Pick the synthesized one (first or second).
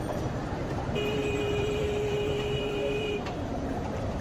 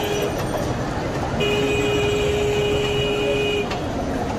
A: first